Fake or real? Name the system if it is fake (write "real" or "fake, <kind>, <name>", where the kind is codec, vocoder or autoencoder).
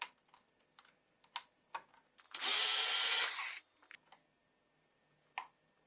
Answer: real